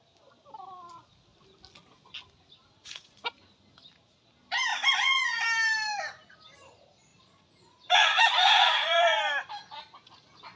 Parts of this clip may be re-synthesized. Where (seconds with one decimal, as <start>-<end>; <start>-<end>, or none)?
2.7-3.3; 4.7-5.4; 7.1-9.2